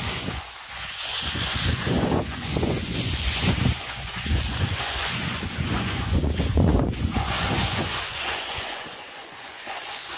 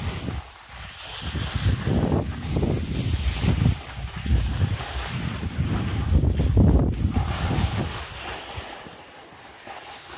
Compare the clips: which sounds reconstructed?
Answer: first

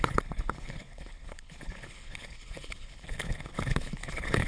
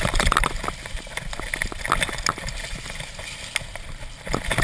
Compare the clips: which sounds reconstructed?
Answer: first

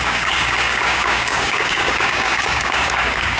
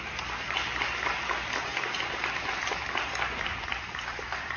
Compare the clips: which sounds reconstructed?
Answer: first